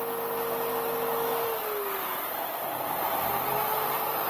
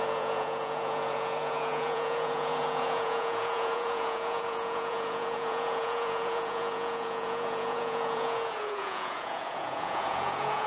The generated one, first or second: second